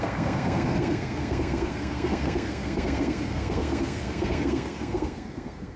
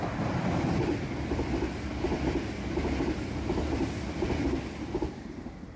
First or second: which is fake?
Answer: first